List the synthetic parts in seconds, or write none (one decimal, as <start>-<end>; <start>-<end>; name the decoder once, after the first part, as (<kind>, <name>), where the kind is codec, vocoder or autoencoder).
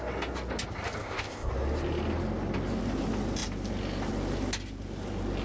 1.0-1.5 (codec, ZipCodec)